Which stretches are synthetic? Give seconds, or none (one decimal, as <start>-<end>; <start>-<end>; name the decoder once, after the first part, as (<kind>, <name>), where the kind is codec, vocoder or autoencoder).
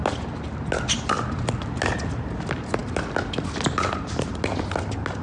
none